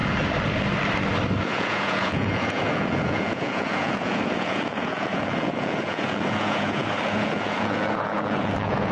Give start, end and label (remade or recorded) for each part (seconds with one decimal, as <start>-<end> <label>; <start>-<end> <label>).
0.0-1.4 recorded; 1.4-8.9 remade